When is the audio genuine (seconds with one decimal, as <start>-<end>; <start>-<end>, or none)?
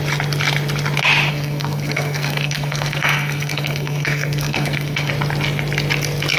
0.0-1.3; 5.1-6.4